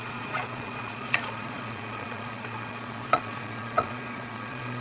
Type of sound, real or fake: fake